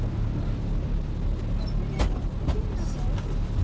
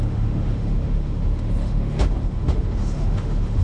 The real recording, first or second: first